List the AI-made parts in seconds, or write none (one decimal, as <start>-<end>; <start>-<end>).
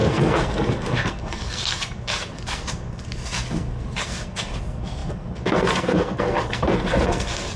0.0-7.6